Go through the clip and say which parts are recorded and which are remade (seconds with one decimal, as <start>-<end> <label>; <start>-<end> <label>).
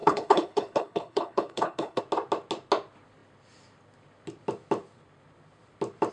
0.0-2.0 remade; 2.0-6.1 recorded